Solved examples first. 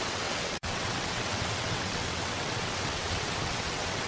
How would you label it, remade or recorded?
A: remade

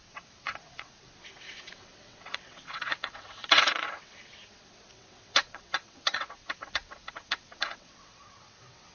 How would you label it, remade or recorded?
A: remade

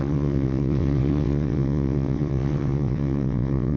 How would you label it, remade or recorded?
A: remade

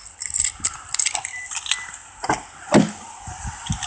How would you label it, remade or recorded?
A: recorded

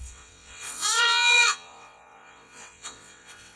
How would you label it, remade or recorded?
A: remade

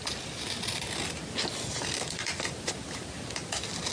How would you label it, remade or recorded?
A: recorded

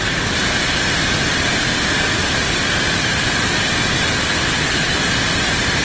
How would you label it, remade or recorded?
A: recorded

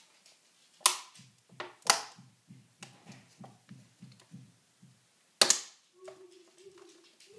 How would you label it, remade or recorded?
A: recorded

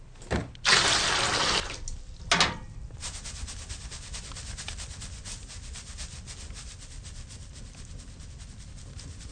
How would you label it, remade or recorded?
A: recorded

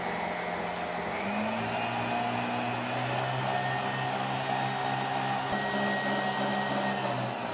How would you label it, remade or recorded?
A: recorded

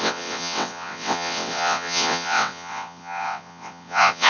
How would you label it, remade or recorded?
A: remade